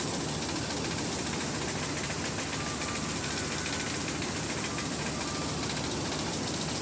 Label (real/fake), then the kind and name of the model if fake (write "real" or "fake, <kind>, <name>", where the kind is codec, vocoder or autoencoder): real